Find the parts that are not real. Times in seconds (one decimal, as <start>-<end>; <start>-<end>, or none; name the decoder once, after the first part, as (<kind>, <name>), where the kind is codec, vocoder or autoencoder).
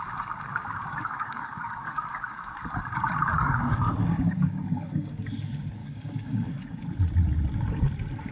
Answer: 0.6-2.6 (codec, DAC); 3.3-5.2; 5.8-6.8